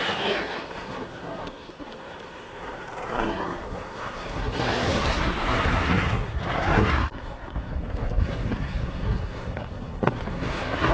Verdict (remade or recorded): remade